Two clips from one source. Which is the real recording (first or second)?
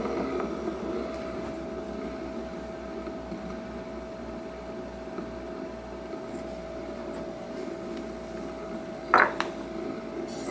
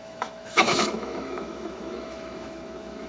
first